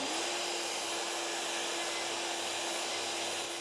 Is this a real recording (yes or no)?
yes